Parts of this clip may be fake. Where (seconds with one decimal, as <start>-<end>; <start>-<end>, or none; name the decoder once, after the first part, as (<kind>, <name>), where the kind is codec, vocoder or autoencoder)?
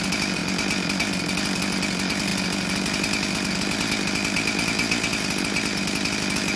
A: none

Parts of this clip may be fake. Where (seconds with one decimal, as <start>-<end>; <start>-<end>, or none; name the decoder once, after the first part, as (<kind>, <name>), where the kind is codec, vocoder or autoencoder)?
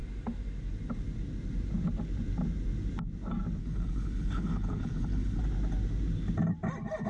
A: 3.6-5.4 (codec, HILCodec)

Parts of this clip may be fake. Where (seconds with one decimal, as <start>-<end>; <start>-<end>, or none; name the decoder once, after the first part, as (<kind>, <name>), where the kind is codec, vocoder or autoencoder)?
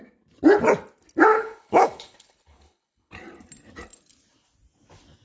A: 1.3-3.1 (codec, HILCodec)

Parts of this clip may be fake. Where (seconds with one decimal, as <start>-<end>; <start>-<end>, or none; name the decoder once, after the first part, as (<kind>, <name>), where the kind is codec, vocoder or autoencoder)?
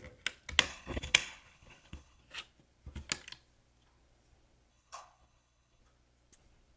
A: 0.7-2.2 (codec, HILCodec); 4.7-5.8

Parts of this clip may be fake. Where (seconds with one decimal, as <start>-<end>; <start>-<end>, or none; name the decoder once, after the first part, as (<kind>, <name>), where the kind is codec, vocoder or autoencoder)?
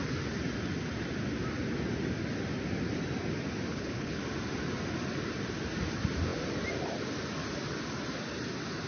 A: 3.7-4.2 (codec, HILCodec)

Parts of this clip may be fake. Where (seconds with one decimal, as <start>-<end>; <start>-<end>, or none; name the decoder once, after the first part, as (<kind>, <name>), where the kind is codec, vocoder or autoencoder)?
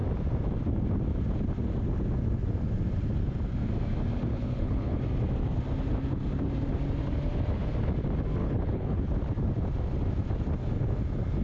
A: 4.3-5.0 (codec, HILCodec); 8.4-9.0